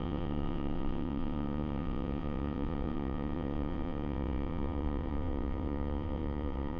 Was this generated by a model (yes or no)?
yes